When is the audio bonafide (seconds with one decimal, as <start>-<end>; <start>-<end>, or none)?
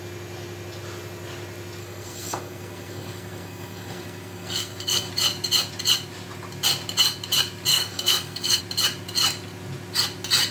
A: 0.0-1.8; 5.1-7.7; 8.6-10.5